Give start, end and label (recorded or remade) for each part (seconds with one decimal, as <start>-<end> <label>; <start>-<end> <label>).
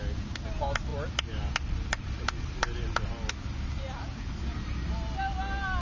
0.0-5.8 recorded